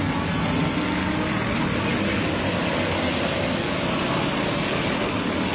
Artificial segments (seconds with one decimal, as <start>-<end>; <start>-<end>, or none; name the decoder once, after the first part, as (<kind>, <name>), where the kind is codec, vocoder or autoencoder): none